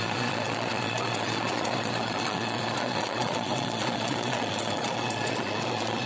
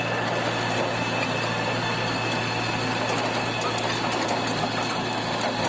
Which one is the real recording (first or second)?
second